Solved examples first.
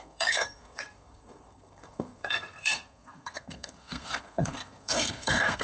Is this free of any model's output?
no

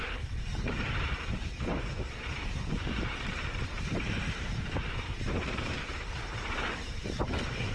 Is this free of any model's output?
no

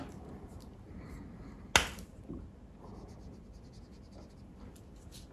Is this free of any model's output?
yes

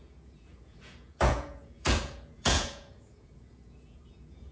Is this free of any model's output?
no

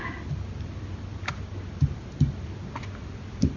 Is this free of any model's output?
yes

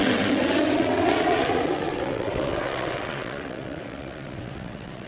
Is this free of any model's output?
no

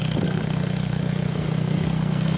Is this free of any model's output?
no